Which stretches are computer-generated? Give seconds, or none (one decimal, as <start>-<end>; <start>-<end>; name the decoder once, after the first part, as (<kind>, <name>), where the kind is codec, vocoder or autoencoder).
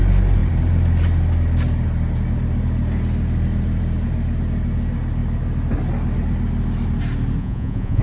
7.4-8.0 (vocoder, Vocos)